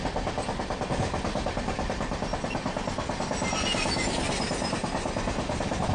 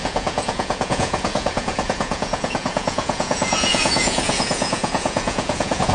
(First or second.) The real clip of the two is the first